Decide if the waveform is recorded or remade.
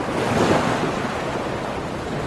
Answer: recorded